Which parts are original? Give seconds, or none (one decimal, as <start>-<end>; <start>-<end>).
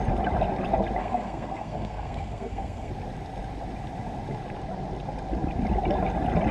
0.0-1.0; 2.9-6.5